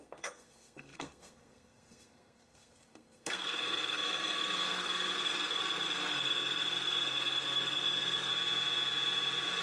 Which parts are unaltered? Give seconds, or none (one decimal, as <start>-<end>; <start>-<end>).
8.3-9.6

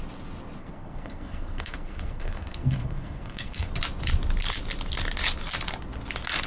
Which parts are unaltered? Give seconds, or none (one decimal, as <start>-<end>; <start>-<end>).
0.0-0.6; 3.7-6.5

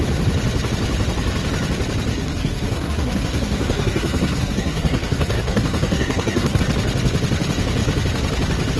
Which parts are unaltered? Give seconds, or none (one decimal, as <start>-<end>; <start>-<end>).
0.0-2.1; 6.6-8.8

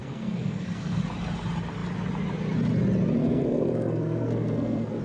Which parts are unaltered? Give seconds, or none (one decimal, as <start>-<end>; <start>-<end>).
1.0-3.2

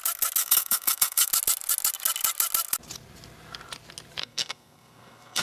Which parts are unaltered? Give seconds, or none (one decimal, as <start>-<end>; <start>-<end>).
0.0-0.4; 1.3-4.2

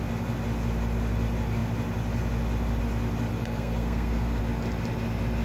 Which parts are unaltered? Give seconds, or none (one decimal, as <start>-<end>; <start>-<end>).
0.0-3.4; 4.4-5.4